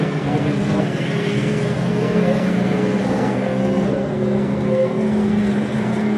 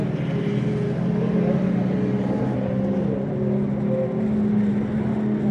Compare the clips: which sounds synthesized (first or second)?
first